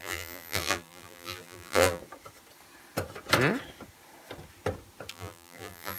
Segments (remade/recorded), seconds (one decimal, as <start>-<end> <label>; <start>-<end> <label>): 0.0-2.0 remade; 2.0-5.1 recorded; 5.1-6.0 remade